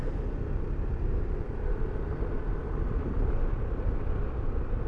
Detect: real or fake real